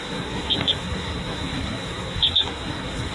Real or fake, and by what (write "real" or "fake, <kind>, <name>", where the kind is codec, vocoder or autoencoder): fake, codec, SNAC